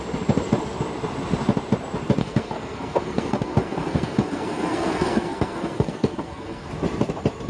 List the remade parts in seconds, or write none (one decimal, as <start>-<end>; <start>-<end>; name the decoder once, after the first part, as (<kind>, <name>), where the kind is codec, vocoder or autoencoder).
2.2-6.7 (codec, SNAC)